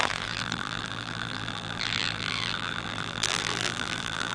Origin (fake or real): fake